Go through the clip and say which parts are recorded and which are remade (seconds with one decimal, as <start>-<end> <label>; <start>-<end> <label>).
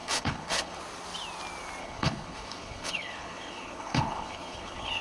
0.0-0.8 remade; 0.8-1.8 recorded; 1.8-5.0 remade